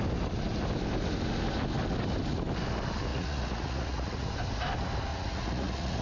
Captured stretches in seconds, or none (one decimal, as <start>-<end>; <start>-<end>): 0.0-3.1; 4.3-5.1